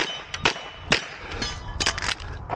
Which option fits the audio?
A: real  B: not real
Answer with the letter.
A